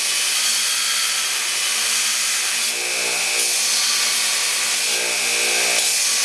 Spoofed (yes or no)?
no